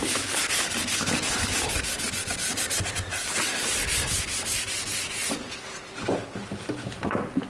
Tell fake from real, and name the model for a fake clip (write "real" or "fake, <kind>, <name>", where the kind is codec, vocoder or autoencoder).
real